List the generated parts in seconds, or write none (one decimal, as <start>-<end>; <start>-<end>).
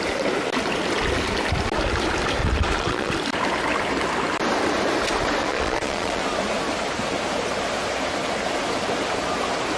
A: 2.4-3.1; 5.4-6.2